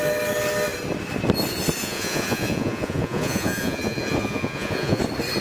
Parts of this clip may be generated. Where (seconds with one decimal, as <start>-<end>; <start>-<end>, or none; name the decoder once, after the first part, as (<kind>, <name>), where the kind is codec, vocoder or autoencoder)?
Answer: 1.8-5.0 (vocoder, Vocos)